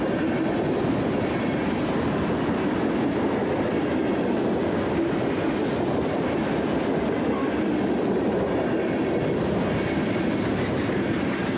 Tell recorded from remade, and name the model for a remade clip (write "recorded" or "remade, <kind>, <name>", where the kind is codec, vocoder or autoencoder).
recorded